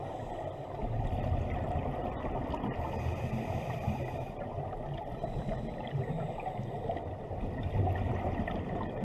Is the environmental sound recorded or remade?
recorded